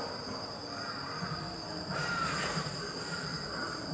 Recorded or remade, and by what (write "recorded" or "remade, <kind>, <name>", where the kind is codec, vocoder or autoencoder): remade, vocoder, BigVGAN v2